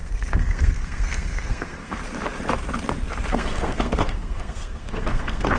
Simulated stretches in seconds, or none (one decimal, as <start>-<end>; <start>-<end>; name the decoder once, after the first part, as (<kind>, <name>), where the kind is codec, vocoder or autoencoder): 0.0-2.0 (codec, SNAC); 3.3-5.6

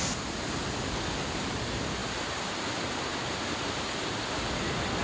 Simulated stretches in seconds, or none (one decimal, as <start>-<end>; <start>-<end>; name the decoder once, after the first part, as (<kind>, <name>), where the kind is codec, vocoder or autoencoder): none

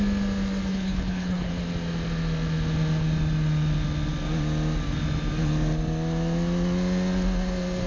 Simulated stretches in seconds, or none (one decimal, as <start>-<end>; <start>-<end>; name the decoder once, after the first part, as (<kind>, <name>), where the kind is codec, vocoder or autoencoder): 0.7-1.5 (codec, HILCodec)